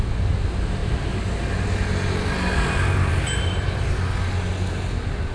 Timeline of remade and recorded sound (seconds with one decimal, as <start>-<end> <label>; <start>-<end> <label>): 0.0-5.3 recorded